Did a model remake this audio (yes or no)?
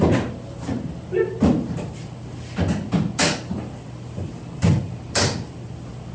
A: no